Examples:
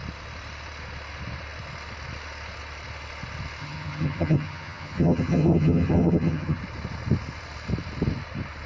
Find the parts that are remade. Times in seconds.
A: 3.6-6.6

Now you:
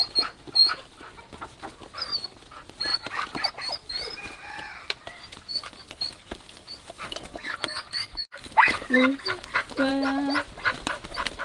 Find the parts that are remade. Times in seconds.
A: 5.5-9.9

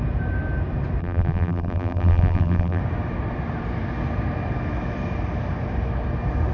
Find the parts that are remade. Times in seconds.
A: 1.0-2.8

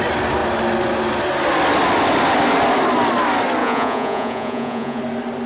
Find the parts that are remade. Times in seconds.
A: 3.6-5.0